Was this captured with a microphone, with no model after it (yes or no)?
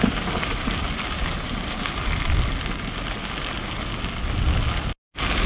yes